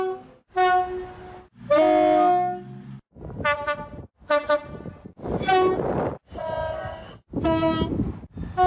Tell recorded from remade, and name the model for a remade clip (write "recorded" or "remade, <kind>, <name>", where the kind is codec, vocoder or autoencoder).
recorded